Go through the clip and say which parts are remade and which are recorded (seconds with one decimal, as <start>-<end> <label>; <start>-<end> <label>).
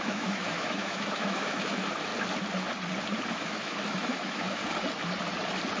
0.0-2.1 remade; 2.1-3.3 recorded; 3.3-4.6 remade; 4.6-5.8 recorded